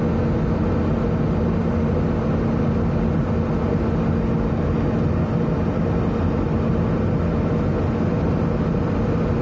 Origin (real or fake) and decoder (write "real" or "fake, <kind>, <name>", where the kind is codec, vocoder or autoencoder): real